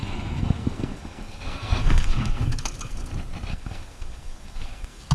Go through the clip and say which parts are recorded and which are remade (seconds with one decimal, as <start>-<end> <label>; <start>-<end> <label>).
0.0-3.1 remade; 3.1-3.5 recorded; 3.5-5.1 remade